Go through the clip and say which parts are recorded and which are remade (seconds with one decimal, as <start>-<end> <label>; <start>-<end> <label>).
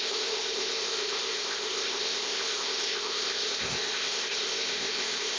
0.0-5.4 remade